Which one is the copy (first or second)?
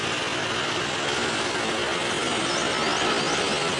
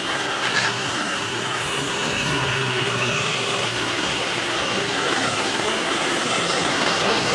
second